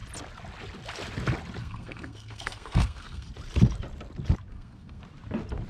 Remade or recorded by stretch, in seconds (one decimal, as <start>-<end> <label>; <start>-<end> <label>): 0.0-1.6 recorded; 1.6-3.3 remade; 3.3-4.5 recorded; 4.5-5.0 remade; 5.0-5.7 recorded